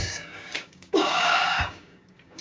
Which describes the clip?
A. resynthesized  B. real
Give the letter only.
A